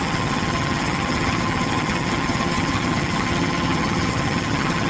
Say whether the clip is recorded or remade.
remade